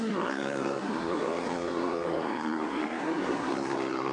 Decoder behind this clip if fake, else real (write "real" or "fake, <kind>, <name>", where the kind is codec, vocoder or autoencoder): fake, codec, SNAC